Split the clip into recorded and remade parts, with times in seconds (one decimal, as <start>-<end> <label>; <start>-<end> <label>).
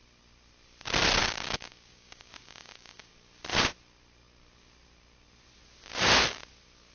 0.0-1.2 recorded; 1.2-3.1 remade; 3.1-6.9 recorded